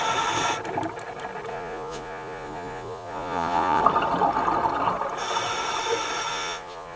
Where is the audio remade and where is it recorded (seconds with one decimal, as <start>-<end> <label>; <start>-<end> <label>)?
0.0-1.5 recorded; 1.5-3.8 remade; 3.8-6.3 recorded; 6.3-7.0 remade